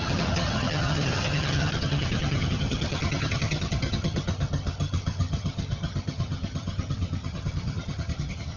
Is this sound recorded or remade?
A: remade